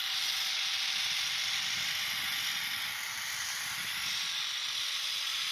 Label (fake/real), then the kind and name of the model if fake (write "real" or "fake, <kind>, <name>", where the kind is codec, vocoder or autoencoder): real